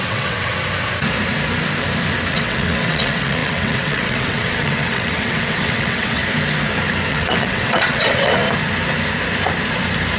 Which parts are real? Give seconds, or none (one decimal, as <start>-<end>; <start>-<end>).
0.5-2.3; 6.2-7.1; 8.4-10.2